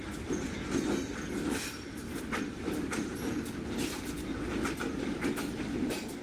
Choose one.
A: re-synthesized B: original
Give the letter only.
B